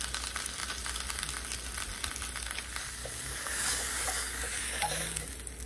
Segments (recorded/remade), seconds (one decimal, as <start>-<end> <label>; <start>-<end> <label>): 0.0-3.0 recorded; 3.0-5.3 remade; 5.3-5.7 recorded